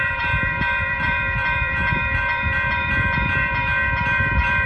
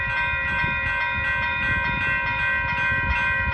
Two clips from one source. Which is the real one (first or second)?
second